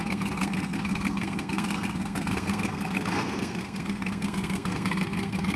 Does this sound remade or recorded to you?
remade